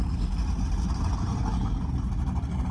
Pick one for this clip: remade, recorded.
recorded